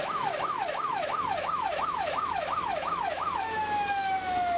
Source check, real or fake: fake